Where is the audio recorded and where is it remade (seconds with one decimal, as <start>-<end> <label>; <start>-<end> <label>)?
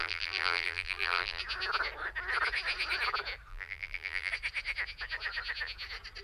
0.0-1.4 remade; 1.4-3.5 recorded; 3.5-4.3 remade; 4.3-6.2 recorded